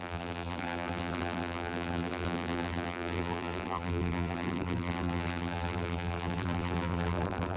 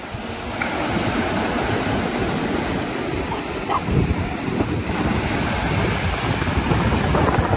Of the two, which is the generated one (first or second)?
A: first